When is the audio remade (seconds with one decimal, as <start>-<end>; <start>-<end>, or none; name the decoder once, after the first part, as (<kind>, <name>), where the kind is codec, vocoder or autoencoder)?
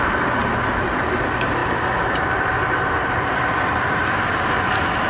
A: 0.4-1.1 (vocoder, BigVGAN v2)